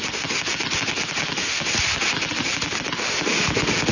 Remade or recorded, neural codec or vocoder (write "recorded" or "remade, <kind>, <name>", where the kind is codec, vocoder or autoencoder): recorded